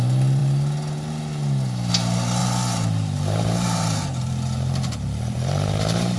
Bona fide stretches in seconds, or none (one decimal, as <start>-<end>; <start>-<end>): 0.0-2.4